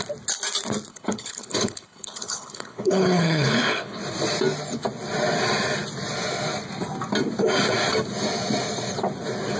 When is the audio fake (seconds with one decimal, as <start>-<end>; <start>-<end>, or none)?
0.9-4.0